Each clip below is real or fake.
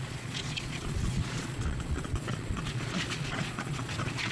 fake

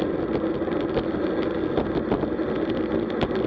real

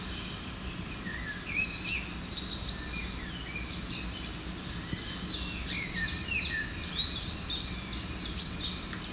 real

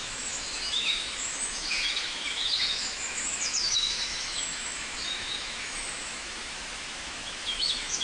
fake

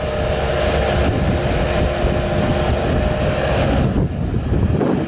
real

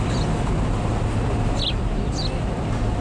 fake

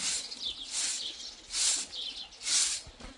real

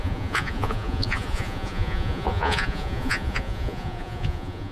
fake